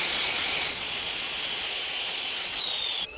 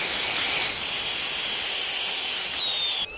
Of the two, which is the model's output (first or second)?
first